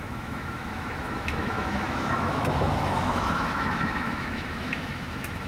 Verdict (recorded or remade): remade